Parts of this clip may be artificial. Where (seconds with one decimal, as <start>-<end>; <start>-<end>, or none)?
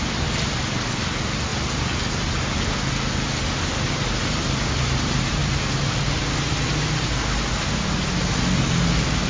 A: none